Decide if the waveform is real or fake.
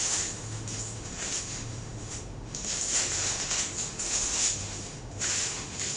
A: fake